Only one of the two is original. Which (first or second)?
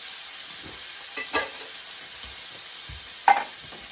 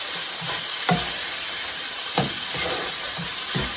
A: first